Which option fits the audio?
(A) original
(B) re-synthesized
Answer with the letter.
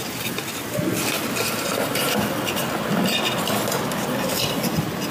A